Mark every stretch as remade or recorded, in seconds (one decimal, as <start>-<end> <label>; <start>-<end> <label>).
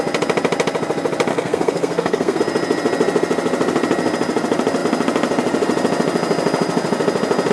0.0-1.3 recorded; 1.3-2.4 remade; 2.4-7.5 recorded